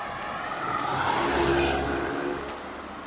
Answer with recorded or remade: recorded